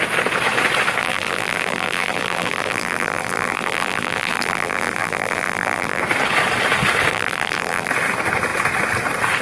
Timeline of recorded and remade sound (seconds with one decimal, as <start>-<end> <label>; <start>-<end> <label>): 0.0-1.0 recorded; 1.0-6.0 remade; 6.0-7.1 recorded; 7.1-7.9 remade; 7.9-9.4 recorded